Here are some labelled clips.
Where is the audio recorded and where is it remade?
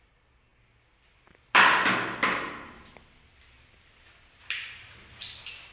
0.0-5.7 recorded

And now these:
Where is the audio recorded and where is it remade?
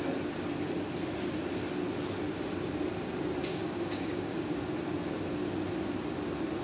0.0-3.4 recorded; 3.4-4.6 remade; 4.6-6.6 recorded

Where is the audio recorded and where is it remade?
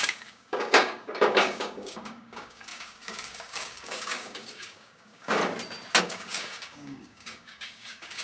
0.0-5.4 remade; 5.4-6.0 recorded; 6.0-8.2 remade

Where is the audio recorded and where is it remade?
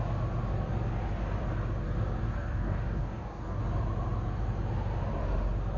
0.0-2.2 recorded; 2.2-3.6 remade; 3.6-5.8 recorded